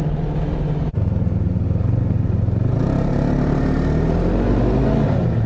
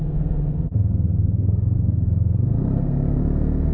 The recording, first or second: first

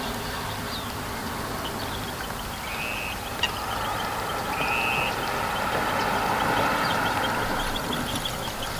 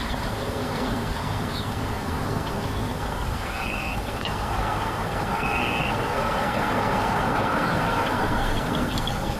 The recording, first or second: first